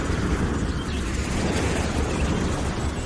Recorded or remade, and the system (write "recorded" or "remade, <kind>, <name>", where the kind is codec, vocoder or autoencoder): recorded